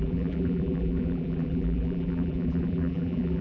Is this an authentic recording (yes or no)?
no